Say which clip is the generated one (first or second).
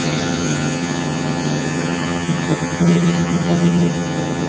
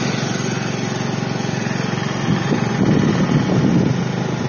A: first